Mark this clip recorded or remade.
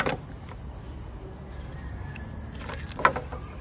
recorded